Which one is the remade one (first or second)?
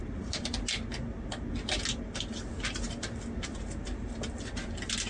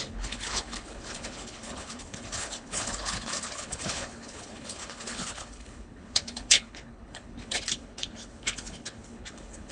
second